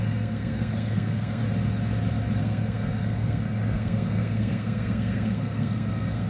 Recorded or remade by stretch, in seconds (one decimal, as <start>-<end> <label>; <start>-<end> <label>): 0.0-1.4 remade; 1.4-2.4 recorded; 2.4-6.3 remade